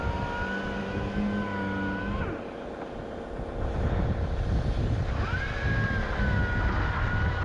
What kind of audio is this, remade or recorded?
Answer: recorded